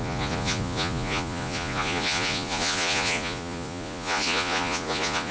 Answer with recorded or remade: remade